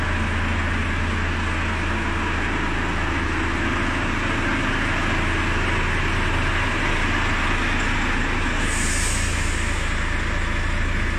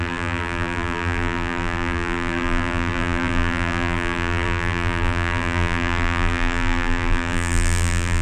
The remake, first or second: second